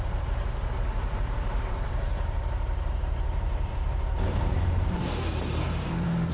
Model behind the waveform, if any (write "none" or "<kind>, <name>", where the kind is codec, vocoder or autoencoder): vocoder, BigVGAN v2